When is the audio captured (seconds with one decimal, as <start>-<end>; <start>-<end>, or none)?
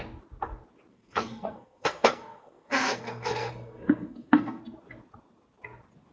0.0-0.9; 4.6-6.1